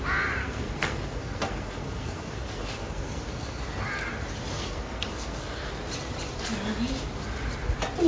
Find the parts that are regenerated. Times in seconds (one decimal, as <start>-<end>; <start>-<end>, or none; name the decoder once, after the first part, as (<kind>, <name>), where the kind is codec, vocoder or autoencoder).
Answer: 0.4-3.6 (codec, SNAC); 4.5-5.7